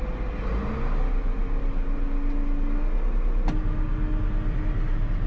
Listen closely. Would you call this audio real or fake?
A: real